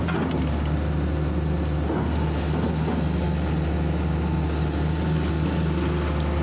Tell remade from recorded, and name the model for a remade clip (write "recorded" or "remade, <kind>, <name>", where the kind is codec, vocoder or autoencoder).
recorded